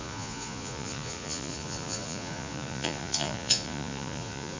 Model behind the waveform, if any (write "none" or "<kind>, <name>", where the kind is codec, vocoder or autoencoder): vocoder, Vocos